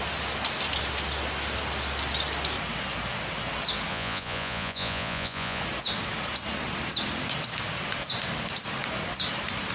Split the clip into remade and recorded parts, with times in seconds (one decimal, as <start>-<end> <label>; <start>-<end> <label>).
0.0-3.9 recorded; 3.9-5.6 remade; 5.6-9.7 recorded